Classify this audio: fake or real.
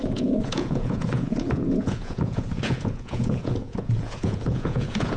fake